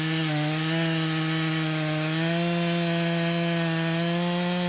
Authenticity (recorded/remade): recorded